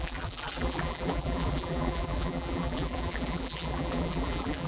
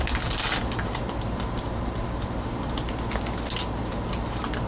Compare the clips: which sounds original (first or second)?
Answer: second